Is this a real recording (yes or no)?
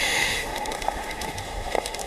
no